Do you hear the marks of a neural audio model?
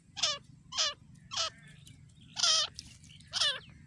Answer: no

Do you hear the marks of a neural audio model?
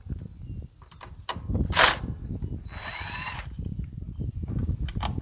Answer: no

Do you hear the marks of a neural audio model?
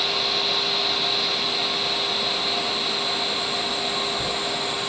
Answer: no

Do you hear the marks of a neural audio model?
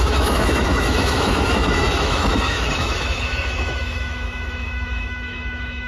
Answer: yes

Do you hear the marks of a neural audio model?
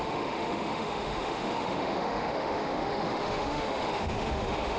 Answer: yes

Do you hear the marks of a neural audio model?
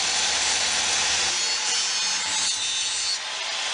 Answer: no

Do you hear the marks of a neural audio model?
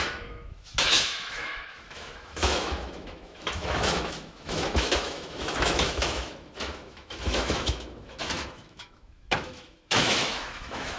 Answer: yes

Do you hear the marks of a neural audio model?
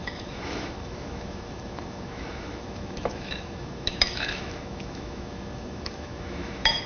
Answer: yes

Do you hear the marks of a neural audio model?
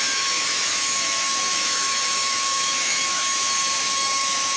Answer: yes